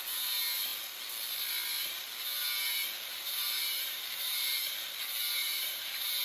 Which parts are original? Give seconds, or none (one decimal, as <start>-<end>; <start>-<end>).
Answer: 0.0-3.1; 4.6-5.4

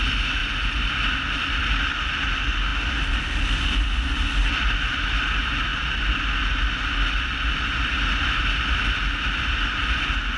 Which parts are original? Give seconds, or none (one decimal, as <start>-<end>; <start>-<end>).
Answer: 0.0-10.4